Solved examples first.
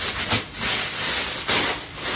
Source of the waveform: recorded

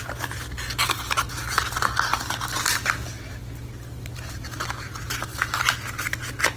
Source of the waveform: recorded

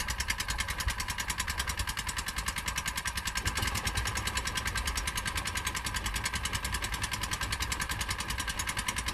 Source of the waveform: recorded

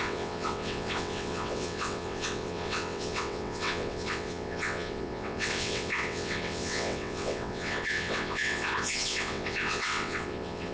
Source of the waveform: remade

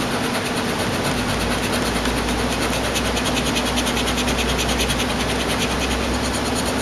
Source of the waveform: recorded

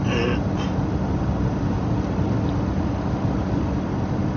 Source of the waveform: recorded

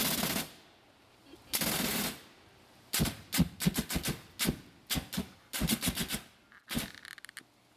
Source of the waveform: recorded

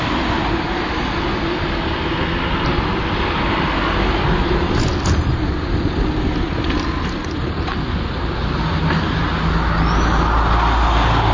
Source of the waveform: recorded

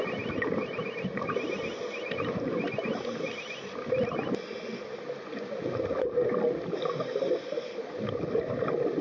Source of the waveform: recorded